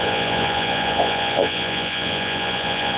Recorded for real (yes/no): no